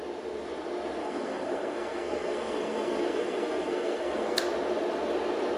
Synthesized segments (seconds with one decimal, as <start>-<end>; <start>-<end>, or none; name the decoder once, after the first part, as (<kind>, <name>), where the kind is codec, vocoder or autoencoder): 1.0-4.4 (codec, SNAC)